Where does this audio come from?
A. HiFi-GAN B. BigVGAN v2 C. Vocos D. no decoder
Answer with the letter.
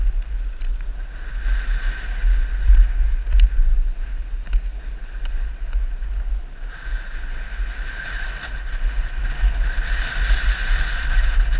D